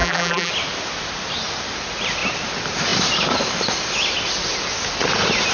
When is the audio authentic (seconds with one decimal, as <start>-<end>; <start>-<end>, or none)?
0.5-5.5